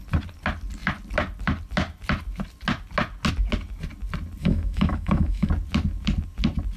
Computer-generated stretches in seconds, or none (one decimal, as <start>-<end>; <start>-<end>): 4.4-5.5